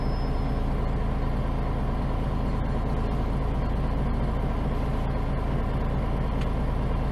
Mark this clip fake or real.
real